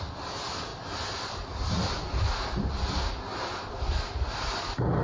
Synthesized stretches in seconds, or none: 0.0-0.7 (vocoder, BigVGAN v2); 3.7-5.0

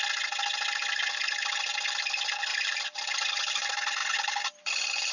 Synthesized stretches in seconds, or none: 4.0-5.1 (vocoder, BigVGAN v2)

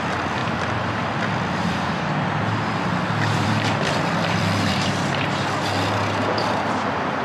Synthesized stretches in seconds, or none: 0.0-7.2 (vocoder, BigVGAN v2)

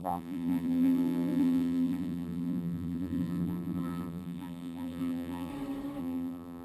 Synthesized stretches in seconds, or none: 0.0-5.5 (vocoder, BigVGAN v2); 6.0-6.6

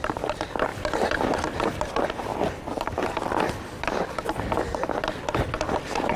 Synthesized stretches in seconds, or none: 0.0-0.7 (vocoder, BigVGAN v2); 1.6-2.3

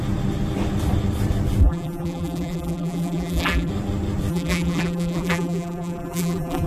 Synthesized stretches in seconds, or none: 1.6-3.7 (vocoder, BigVGAN v2); 4.3-6.7

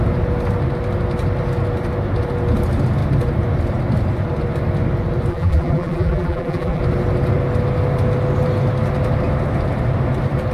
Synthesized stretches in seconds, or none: 5.3-6.8 (vocoder, BigVGAN v2)

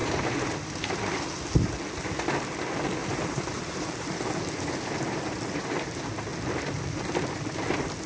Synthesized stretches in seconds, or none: 0.0-0.5 (vocoder, BigVGAN v2); 3.0-4.1